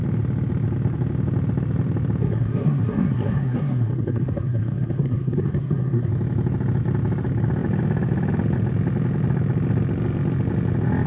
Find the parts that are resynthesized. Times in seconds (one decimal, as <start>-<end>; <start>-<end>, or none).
2.2-6.1